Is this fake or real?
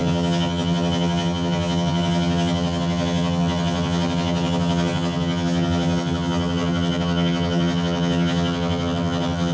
fake